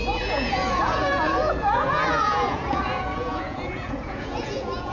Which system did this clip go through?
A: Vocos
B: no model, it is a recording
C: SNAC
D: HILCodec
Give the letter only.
A